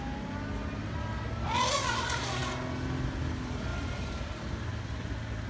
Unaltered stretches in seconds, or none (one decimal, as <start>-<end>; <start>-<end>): 0.0-5.5